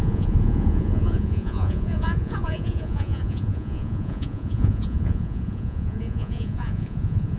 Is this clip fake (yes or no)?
yes